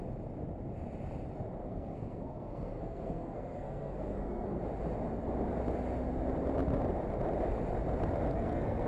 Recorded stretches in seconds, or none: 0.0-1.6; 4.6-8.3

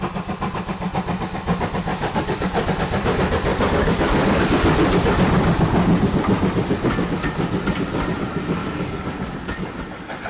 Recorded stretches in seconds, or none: 0.0-1.9; 2.7-3.5; 4.4-8.6; 9.8-10.3

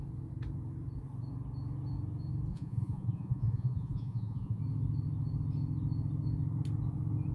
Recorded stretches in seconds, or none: 0.0-2.5; 4.6-7.3

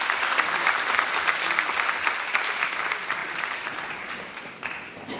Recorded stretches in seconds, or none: 0.0-3.2; 4.1-5.2

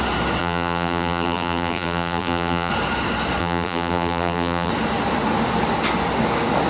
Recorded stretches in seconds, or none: 0.0-0.4; 2.7-3.4; 4.7-6.7

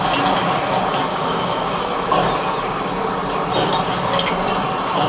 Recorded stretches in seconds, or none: 0.0-1.1; 1.7-5.1